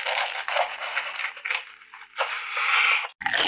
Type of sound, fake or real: real